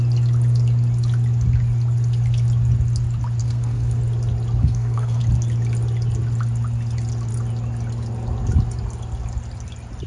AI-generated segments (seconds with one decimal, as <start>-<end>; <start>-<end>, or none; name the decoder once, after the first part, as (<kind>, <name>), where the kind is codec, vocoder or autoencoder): 3.4-4.0 (codec, SNAC); 4.6-5.2